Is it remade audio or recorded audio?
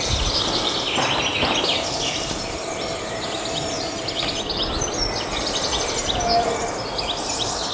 recorded